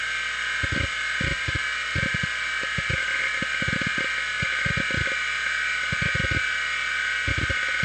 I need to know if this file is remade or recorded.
recorded